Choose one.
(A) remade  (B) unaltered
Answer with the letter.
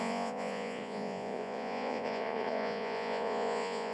A